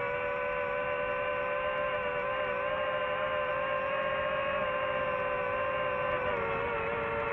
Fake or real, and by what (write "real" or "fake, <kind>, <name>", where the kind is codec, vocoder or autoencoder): real